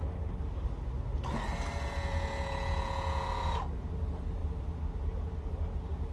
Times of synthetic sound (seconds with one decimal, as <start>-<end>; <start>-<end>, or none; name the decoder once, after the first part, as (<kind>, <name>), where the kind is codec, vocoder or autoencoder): none